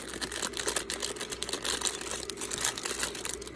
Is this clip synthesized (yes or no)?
no